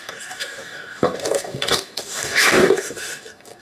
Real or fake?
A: fake